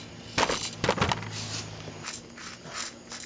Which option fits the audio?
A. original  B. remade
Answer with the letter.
A